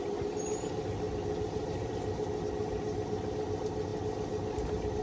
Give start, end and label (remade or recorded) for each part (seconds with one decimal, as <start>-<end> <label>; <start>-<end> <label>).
0.0-5.0 recorded